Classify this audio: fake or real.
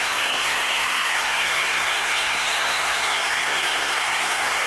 fake